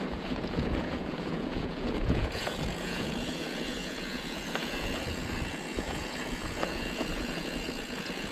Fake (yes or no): yes